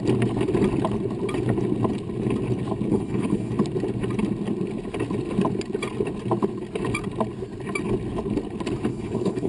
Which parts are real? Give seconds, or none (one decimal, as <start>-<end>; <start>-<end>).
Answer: 0.0-2.9; 3.5-8.9